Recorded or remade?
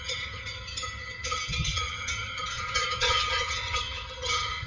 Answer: remade